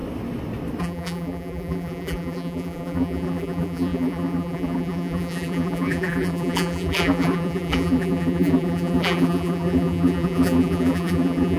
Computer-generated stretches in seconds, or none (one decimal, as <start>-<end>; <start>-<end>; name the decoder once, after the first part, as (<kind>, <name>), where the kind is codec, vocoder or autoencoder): 0.8-11.6 (vocoder, BigVGAN v2)